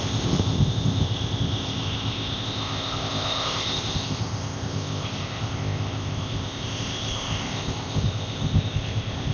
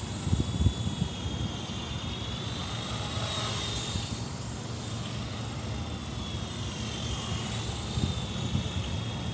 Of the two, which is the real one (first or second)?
second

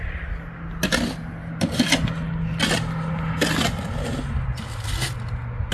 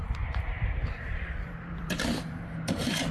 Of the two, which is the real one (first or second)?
first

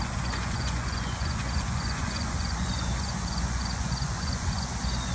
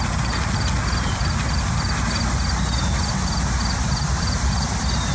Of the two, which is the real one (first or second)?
second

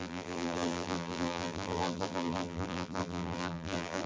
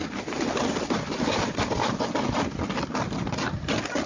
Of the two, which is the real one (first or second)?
second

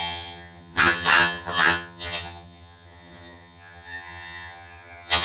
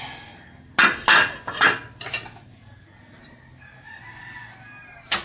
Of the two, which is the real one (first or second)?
second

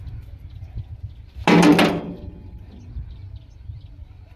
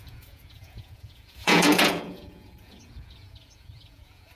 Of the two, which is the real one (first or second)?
first